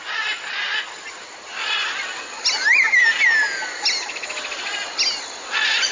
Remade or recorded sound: recorded